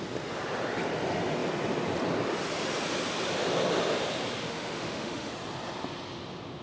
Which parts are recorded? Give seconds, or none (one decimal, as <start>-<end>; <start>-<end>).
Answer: 0.0-4.4; 5.3-6.6